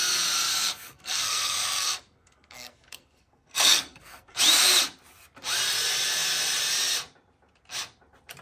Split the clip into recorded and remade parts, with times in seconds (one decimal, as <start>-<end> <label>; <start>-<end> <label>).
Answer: 0.0-0.5 recorded; 0.5-4.4 remade; 4.4-8.4 recorded